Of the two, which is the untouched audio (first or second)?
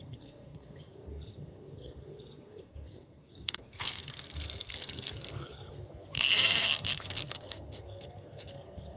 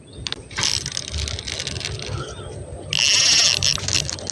second